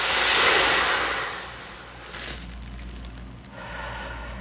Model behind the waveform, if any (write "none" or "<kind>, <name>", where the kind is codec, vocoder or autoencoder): none